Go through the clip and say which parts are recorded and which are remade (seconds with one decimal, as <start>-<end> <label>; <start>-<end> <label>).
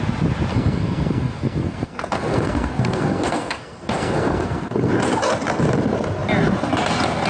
0.0-0.5 recorded; 0.5-4.9 remade; 4.9-7.3 recorded